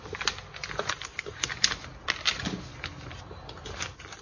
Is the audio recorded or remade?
recorded